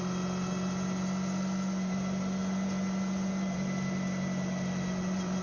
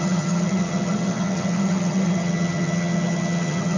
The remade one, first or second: second